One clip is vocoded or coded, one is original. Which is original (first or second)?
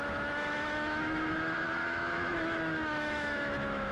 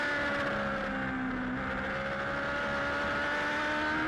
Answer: second